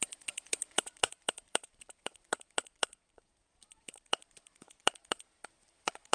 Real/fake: fake